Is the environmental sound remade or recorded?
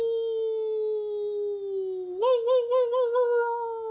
recorded